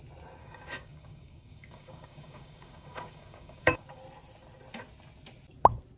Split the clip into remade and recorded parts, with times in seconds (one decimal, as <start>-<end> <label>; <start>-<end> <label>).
0.0-0.4 recorded; 0.4-4.0 remade; 4.0-6.0 recorded